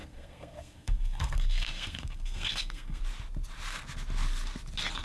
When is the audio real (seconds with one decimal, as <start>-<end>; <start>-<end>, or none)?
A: 3.0-5.0